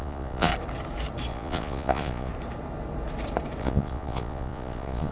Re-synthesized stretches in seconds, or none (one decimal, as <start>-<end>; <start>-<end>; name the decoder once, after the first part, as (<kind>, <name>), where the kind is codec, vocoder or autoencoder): 0.0-0.5 (vocoder, Vocos); 1.3-2.3; 3.6-5.1